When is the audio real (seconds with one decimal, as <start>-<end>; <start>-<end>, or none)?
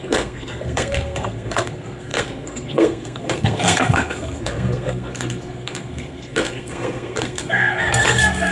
none